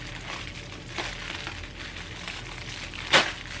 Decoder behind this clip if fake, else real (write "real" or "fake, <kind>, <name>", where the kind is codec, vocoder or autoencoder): real